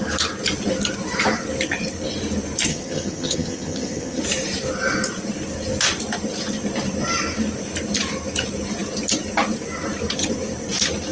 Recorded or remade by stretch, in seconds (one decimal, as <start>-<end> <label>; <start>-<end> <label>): 0.0-2.7 recorded; 2.7-4.2 remade; 4.2-11.1 recorded